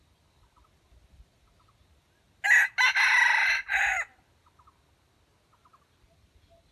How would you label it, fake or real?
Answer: real